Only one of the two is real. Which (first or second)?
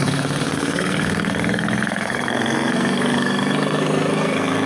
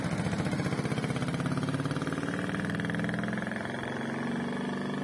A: second